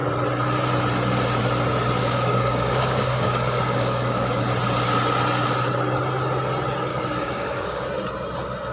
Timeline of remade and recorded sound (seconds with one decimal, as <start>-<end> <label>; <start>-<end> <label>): 0.0-2.0 recorded; 2.0-4.4 remade; 4.4-6.9 recorded; 6.9-7.9 remade; 7.9-8.7 recorded